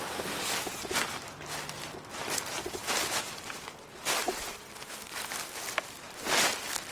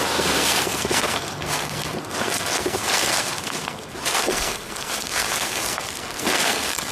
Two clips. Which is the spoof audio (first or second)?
second